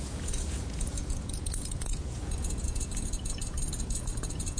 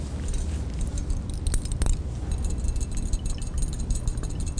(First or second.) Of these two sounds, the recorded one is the second